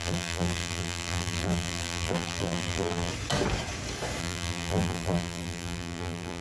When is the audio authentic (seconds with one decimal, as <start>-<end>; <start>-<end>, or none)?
3.1-4.2